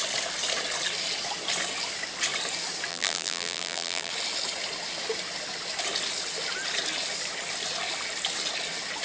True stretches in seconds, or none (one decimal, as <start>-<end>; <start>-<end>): 0.0-2.9; 4.1-9.0